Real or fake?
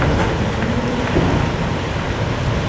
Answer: real